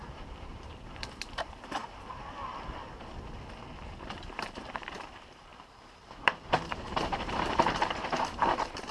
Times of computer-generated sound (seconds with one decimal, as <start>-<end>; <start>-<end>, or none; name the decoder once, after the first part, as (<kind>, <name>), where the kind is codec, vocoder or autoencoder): 0.0-1.8 (vocoder, BigVGAN v2); 4.1-8.9